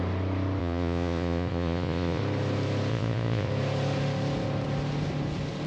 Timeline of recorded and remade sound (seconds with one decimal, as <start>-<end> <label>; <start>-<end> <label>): 0.0-0.6 recorded; 0.6-2.2 remade; 2.2-2.9 recorded; 2.9-3.5 remade; 3.5-5.7 recorded